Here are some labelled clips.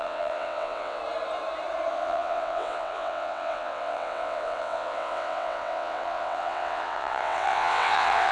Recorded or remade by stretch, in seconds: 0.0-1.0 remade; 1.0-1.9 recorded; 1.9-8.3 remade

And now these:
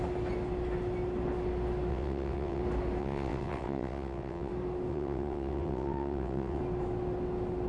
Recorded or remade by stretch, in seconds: 0.0-1.9 recorded; 1.9-2.6 remade; 2.6-3.0 recorded; 3.0-4.5 remade; 4.5-4.9 recorded; 4.9-6.6 remade; 6.6-7.7 recorded

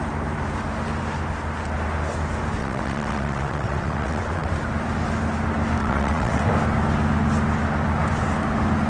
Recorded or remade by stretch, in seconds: 0.0-2.6 recorded; 2.6-4.5 remade; 4.5-5.8 recorded; 5.8-6.4 remade; 6.4-8.9 recorded

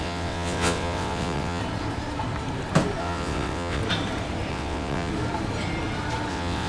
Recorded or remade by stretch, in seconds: 0.0-1.6 remade; 1.6-3.0 recorded; 3.0-3.8 remade; 3.8-4.5 recorded; 4.5-5.1 remade; 5.1-6.3 recorded; 6.3-6.7 remade

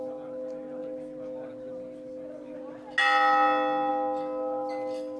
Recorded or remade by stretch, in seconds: 0.0-5.2 recorded